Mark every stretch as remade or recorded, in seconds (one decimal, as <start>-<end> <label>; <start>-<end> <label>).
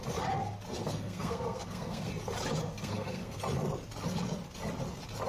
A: 0.0-0.8 recorded; 0.8-2.1 remade; 2.1-2.6 recorded; 2.6-3.4 remade; 3.4-5.3 recorded